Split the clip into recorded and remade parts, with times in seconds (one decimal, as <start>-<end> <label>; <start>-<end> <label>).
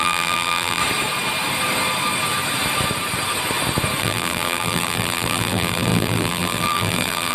0.0-0.8 remade; 0.8-4.0 recorded; 4.0-7.3 remade